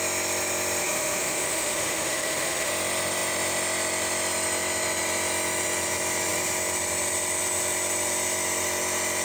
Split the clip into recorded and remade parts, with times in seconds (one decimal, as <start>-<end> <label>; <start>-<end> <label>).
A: 0.0-0.8 recorded; 0.8-2.7 remade; 2.7-9.2 recorded